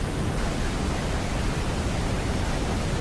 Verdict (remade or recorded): recorded